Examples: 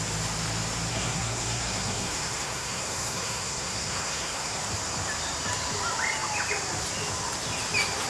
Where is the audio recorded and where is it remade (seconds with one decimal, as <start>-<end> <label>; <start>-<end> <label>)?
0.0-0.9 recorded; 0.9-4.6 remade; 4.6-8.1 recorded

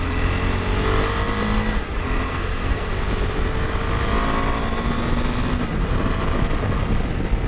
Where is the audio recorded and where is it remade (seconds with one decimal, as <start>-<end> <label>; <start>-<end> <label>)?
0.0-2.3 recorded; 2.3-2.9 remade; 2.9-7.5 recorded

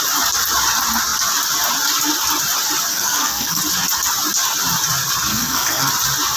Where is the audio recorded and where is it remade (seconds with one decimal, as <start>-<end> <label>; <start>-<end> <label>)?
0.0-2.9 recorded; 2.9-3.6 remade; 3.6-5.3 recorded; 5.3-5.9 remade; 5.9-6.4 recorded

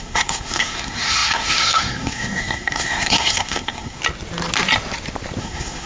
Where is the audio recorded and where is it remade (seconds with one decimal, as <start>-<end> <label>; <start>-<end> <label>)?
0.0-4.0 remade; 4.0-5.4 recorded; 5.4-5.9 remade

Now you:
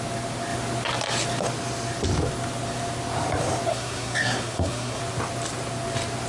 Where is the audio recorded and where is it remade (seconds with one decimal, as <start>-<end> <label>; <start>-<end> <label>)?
0.0-3.7 recorded; 3.7-5.0 remade; 5.0-6.3 recorded

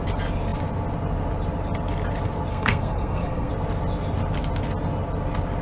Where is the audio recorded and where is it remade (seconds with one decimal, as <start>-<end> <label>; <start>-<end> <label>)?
0.0-2.5 recorded; 2.5-3.5 remade; 3.5-5.6 recorded

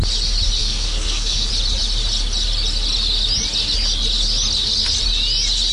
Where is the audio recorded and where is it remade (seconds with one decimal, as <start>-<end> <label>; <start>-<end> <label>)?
0.0-0.6 recorded; 0.6-1.5 remade; 1.5-5.7 recorded